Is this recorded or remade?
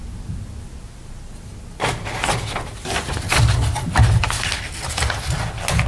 recorded